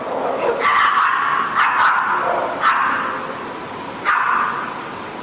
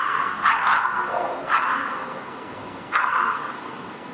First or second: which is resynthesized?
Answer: second